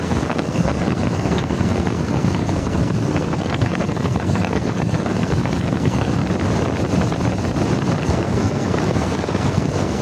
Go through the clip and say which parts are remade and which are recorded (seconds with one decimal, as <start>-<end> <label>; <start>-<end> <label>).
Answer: 0.0-6.2 remade; 6.2-8.0 recorded; 8.0-10.0 remade

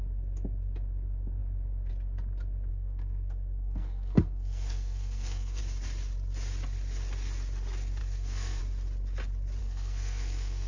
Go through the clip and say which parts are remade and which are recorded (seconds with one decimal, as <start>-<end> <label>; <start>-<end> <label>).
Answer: 0.0-2.7 recorded; 2.7-5.6 remade; 5.6-8.0 recorded; 8.0-8.6 remade; 8.6-9.6 recorded; 9.6-10.7 remade

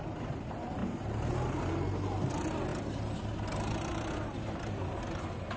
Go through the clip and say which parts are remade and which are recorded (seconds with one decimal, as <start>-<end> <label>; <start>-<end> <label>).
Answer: 0.0-5.6 recorded

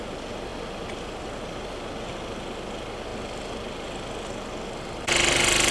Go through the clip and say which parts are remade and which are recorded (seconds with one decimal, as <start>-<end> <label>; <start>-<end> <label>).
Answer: 0.0-5.7 recorded

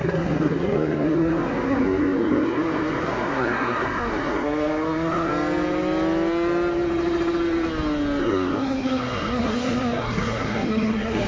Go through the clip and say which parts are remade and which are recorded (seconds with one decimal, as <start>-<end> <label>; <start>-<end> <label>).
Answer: 0.0-5.3 remade; 5.3-8.2 recorded; 8.2-11.3 remade